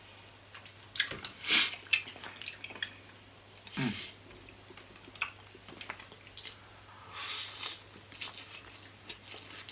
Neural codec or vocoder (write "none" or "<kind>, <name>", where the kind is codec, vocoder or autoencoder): none